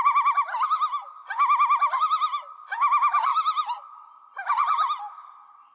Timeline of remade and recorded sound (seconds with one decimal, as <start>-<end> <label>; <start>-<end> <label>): 0.0-5.7 recorded